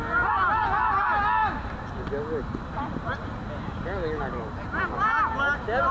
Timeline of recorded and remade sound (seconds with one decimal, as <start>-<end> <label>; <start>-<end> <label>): 0.0-5.9 recorded